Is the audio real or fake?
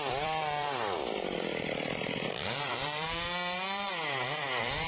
fake